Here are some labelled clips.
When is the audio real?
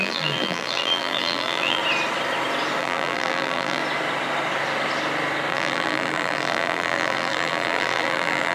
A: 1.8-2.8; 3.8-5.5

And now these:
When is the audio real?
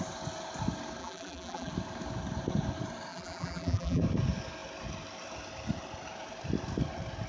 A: 0.0-1.0; 1.7-3.1; 4.0-7.3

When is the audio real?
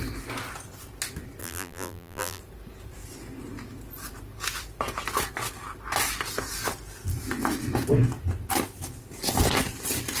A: 0.0-1.4; 2.4-10.2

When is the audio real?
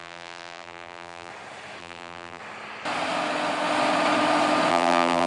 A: 1.3-1.8; 2.4-4.7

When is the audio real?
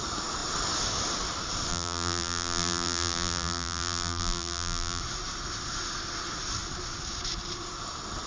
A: 0.0-1.7; 5.0-8.3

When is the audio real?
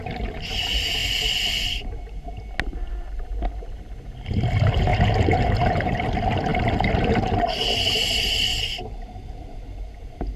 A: 0.0-4.9; 5.9-6.5; 9.6-10.4